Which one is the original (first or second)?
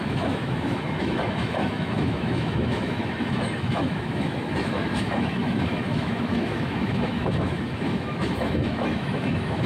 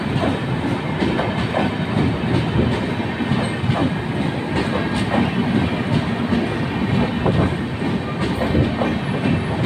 second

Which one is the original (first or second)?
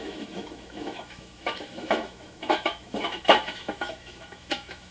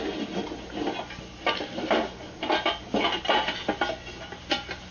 second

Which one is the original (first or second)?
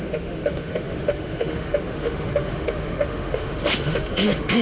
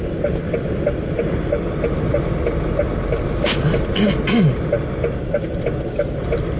second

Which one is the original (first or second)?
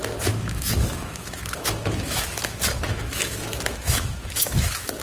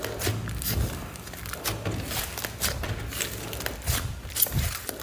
second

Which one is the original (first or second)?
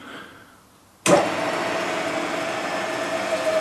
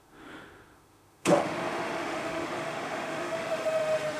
first